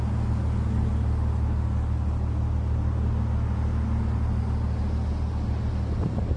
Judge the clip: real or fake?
real